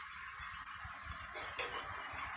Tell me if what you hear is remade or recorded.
recorded